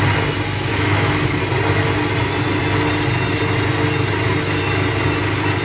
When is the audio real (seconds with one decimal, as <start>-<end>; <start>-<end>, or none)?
0.0-0.7; 1.4-5.6